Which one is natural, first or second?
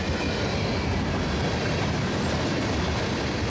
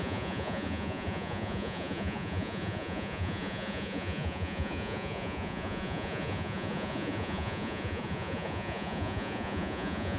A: first